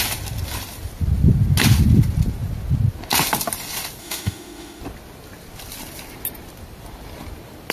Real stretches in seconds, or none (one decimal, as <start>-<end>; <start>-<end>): 0.0-4.0; 4.8-7.7